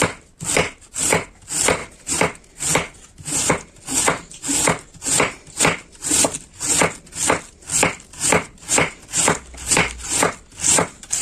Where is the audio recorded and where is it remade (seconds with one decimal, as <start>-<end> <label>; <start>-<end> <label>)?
0.0-11.2 recorded